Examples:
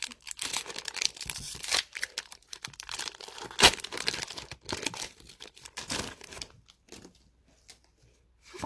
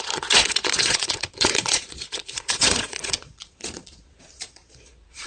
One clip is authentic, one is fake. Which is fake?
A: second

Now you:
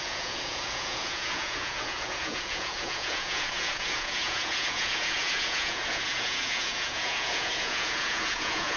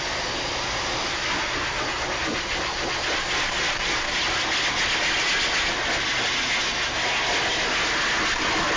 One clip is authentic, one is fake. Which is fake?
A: first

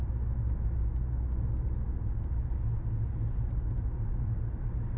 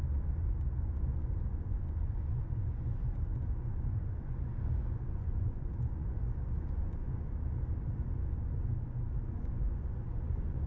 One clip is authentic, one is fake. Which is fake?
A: second